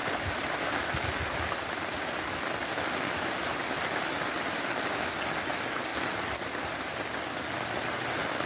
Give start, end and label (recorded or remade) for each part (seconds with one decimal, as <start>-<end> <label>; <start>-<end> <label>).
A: 0.0-8.5 recorded